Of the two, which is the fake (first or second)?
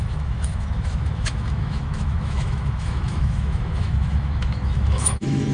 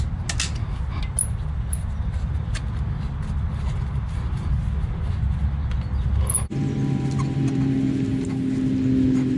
first